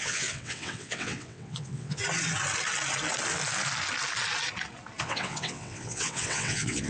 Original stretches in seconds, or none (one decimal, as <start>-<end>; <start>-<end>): 2.0-5.0